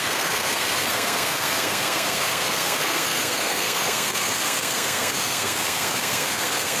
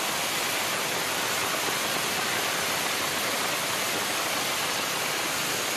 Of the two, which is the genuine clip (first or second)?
second